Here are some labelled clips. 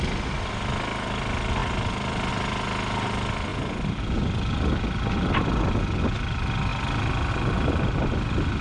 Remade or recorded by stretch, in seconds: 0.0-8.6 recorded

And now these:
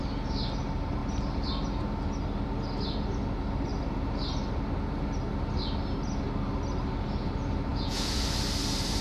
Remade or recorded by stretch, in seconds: 0.0-7.7 recorded; 7.7-8.2 remade; 8.2-9.0 recorded

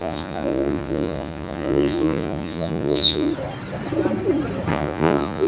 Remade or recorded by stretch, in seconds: 0.0-3.3 remade; 3.3-4.7 recorded; 4.7-5.5 remade

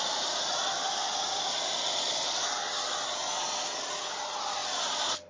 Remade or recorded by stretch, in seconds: 0.0-5.3 recorded

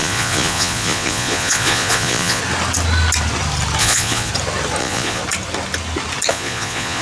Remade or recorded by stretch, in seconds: 0.0-2.4 remade; 2.4-3.8 recorded; 3.8-4.3 remade; 4.3-4.8 recorded; 4.8-5.2 remade; 5.2-6.3 recorded; 6.3-7.0 remade

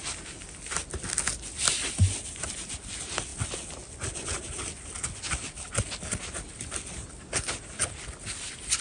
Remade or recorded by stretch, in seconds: 0.0-8.8 recorded

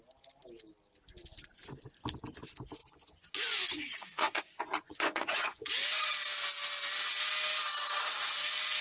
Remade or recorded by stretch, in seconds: 0.0-2.8 recorded; 2.8-6.1 remade; 6.1-8.8 recorded

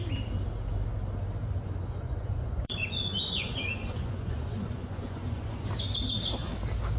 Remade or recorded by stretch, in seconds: 0.0-1.5 recorded; 1.5-5.7 remade; 5.7-7.0 recorded